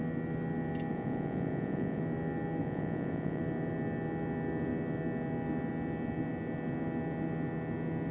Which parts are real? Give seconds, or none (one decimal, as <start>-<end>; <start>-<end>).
0.0-0.9; 2.0-2.6; 3.4-8.1